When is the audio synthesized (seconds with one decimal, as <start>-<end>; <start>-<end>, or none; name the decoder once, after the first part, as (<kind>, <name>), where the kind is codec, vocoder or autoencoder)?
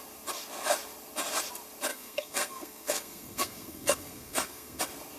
1.9-4.8 (codec, SNAC)